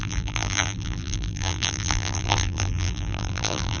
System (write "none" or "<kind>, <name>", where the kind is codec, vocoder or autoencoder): vocoder, BigVGAN v2